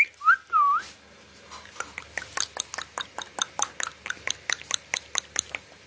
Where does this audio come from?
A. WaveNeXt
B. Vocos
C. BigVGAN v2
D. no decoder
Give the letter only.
D